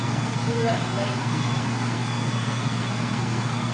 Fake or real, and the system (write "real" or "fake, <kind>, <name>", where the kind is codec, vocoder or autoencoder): fake, codec, SNAC